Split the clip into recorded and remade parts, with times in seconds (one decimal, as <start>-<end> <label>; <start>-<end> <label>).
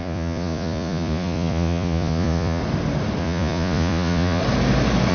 0.0-2.6 remade; 2.6-3.2 recorded; 3.2-4.4 remade; 4.4-5.1 recorded